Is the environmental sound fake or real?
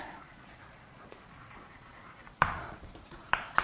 fake